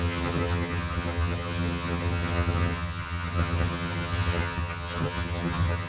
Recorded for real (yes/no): no